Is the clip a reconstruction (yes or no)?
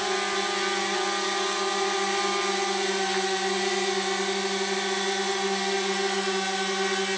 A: no